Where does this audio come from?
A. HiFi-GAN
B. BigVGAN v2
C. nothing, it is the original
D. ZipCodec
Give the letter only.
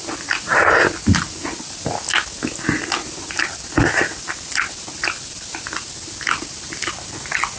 C